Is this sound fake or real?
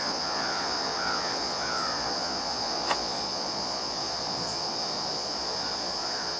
fake